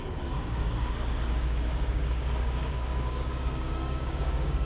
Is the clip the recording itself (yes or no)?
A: no